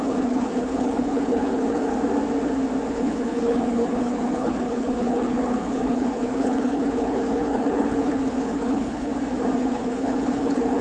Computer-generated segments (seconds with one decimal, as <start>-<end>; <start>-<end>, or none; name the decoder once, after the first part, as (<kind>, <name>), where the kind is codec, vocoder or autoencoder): 0.0-1.9 (codec, HILCodec); 2.9-9.1; 9.6-10.8

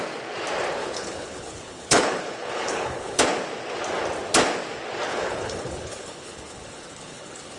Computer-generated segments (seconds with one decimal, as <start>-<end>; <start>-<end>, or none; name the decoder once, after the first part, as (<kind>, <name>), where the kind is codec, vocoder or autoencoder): 0.8-3.2 (codec, HILCodec); 5.1-7.6

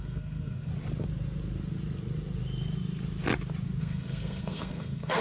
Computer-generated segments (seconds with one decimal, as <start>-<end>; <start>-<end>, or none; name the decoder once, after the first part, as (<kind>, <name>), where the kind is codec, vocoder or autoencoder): 0.0-0.7 (codec, SNAC); 3.8-5.2

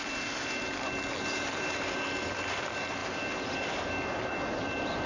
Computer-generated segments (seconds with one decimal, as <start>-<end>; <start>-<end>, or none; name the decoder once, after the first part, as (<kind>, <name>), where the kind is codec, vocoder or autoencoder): none

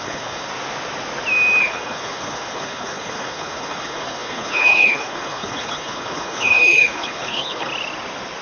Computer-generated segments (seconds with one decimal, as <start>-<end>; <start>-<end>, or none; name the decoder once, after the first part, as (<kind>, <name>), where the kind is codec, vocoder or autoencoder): 0.0-0.5 (codec, HILCodec); 1.6-7.7

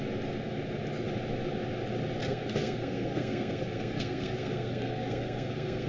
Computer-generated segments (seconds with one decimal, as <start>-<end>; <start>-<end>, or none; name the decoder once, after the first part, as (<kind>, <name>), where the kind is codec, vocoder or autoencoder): 2.2-5.9 (codec, SNAC)